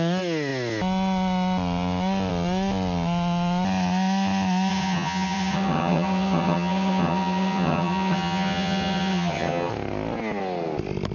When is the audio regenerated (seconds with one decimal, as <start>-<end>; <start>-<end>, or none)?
4.7-9.7